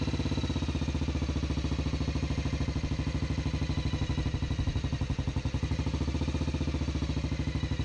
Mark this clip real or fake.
real